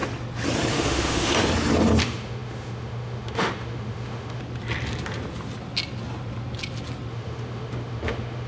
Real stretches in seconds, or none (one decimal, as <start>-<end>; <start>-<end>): 0.0-0.7; 1.3-2.0; 4.4-7.1